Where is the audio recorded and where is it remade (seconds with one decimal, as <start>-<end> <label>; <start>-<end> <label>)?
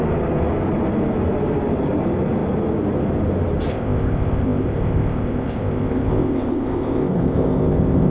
0.0-3.7 recorded; 3.7-8.1 remade